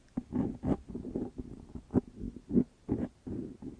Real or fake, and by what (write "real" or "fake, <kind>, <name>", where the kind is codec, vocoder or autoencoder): real